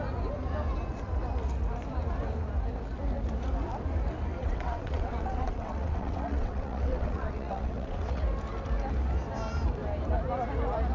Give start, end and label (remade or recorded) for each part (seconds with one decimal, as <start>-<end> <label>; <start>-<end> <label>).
0.0-4.4 recorded; 4.4-8.2 remade; 8.2-10.9 recorded

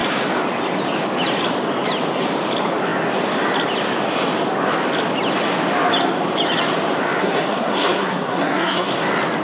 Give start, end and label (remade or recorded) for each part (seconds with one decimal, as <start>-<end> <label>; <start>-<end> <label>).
0.0-7.2 recorded; 7.2-8.9 remade; 8.9-9.4 recorded